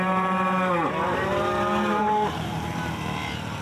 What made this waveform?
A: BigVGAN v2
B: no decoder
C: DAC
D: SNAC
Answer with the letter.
A